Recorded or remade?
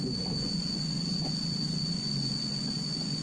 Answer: remade